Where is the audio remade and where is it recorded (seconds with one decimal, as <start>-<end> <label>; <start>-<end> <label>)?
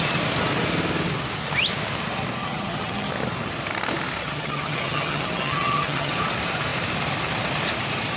0.0-2.4 recorded; 2.4-3.1 remade; 3.1-4.2 recorded; 4.2-6.1 remade; 6.1-8.2 recorded